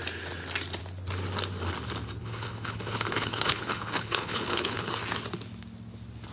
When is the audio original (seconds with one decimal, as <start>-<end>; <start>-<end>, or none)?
0.0-2.2; 4.9-6.3